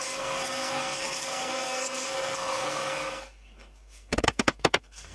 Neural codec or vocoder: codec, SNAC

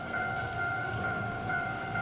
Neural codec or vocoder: codec, SNAC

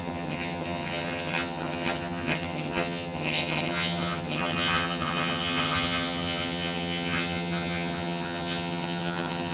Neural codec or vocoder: vocoder, HiFi-GAN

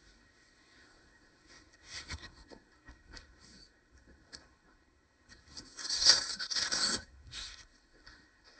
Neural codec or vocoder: codec, SNAC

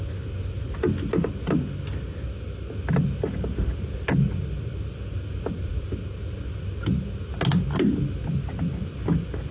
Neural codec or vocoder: none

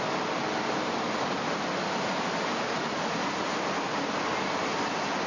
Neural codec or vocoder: none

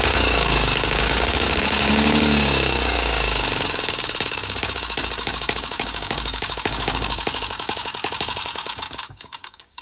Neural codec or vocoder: codec, DAC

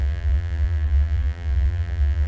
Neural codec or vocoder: vocoder, BigVGAN v2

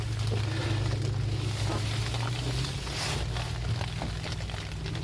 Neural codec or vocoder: none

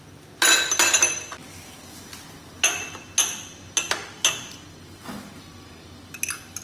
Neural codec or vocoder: none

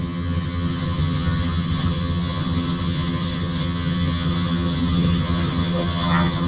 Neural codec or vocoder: vocoder, HiFi-GAN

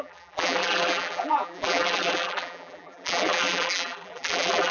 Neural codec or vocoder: vocoder, BigVGAN v2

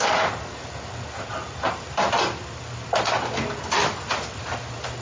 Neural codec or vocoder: none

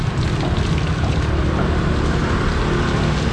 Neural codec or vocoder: none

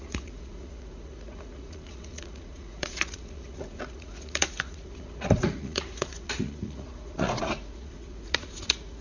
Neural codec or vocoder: vocoder, Vocos